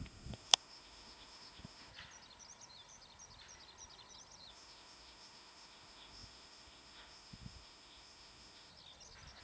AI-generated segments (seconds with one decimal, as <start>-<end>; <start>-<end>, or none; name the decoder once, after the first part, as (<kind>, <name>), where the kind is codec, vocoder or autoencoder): 0.0-1.9 (autoencoder, DAC-VAE); 4.5-8.7